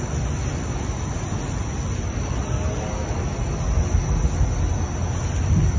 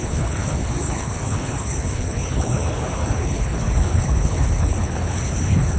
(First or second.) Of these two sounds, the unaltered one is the first